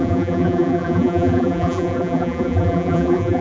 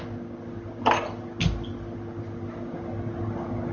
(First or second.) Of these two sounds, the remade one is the first